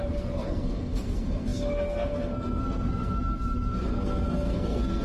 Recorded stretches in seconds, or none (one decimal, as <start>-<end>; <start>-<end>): none